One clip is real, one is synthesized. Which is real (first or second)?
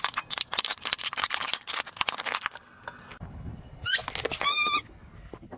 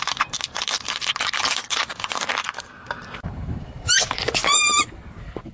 first